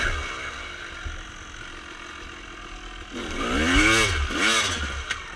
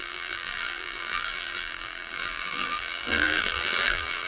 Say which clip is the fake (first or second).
second